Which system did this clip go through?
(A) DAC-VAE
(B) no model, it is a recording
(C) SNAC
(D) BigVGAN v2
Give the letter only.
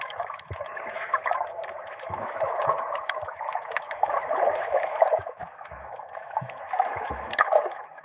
A